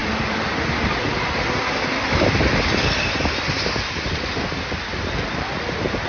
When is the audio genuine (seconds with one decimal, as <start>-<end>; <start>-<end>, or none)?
0.0-6.1